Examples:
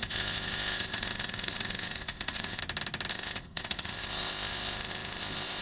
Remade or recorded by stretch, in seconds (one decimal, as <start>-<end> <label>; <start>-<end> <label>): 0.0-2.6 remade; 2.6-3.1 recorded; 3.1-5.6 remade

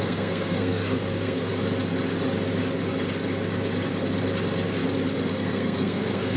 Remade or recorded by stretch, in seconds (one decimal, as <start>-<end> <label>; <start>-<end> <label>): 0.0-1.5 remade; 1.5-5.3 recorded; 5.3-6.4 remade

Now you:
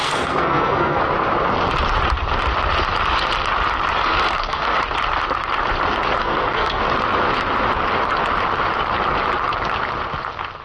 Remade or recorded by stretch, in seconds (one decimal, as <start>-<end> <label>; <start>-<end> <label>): 0.0-1.0 remade; 1.0-4.0 recorded; 4.0-4.8 remade; 4.8-6.2 recorded; 6.2-6.8 remade; 6.8-10.6 recorded